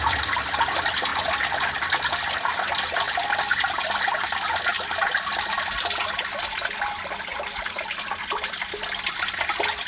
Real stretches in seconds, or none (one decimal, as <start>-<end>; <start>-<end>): 0.0-7.3; 8.6-9.9